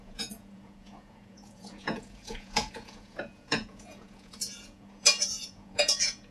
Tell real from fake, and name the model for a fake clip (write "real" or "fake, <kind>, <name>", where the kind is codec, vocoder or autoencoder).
fake, vocoder, Vocos